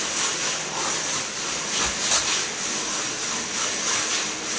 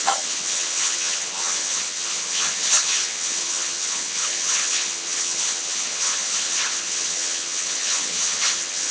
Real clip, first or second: first